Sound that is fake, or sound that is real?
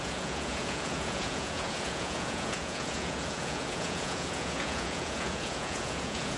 fake